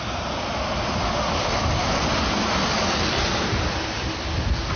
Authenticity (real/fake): real